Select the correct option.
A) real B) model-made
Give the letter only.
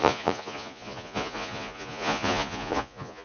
B